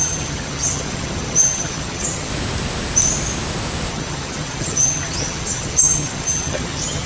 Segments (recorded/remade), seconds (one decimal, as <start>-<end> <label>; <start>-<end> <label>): 0.0-2.3 remade; 2.3-3.9 recorded; 3.9-7.1 remade